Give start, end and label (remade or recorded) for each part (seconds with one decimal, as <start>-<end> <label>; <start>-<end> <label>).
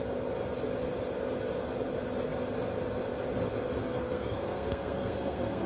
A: 0.0-3.8 recorded; 3.8-5.7 remade